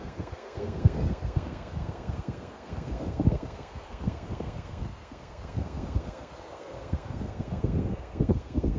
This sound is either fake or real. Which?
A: fake